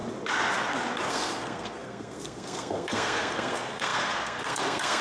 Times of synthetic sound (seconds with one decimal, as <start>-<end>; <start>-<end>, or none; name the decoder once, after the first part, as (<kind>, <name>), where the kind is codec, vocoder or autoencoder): 1.1-5.0 (codec, SNAC)